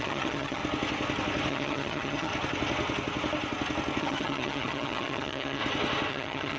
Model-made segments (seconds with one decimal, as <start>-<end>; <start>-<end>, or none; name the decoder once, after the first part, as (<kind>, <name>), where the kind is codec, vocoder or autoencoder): 0.0-0.6 (vocoder, HiFi-GAN); 1.5-2.3; 4.0-5.6; 6.1-6.6